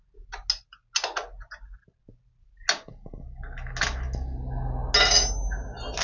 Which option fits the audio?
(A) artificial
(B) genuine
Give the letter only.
B